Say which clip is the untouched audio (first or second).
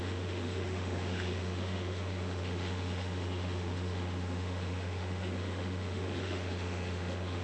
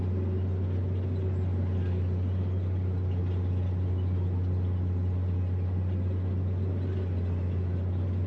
second